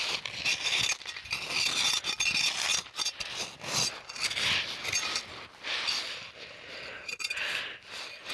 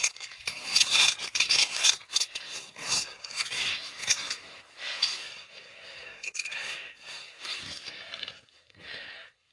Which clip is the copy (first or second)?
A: second